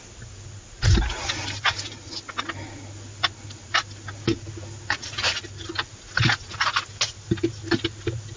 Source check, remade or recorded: recorded